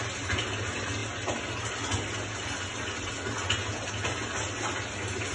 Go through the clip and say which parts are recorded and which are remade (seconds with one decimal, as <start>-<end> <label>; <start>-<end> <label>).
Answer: 0.0-5.3 recorded